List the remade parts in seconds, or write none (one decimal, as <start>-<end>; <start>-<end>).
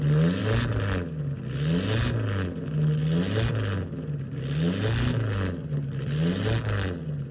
none